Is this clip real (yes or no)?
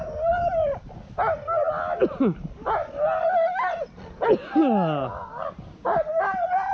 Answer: yes